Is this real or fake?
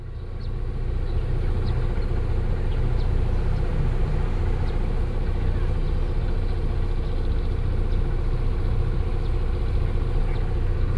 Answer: real